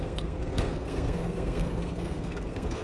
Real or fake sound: fake